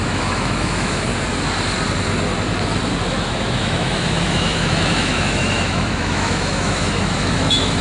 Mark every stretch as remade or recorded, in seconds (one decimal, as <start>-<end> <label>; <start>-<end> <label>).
0.0-1.1 remade; 1.1-3.1 recorded; 3.1-7.8 remade